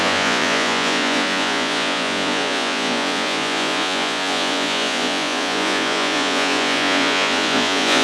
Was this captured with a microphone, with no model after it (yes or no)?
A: no